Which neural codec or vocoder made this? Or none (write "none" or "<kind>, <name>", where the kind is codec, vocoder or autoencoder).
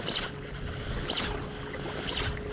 none